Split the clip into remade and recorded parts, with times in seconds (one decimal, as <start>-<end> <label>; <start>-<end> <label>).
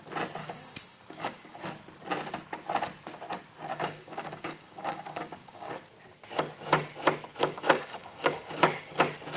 0.0-0.4 recorded; 0.4-1.6 remade; 1.6-3.7 recorded; 3.7-5.8 remade; 5.8-7.4 recorded; 7.4-9.0 remade; 9.0-9.4 recorded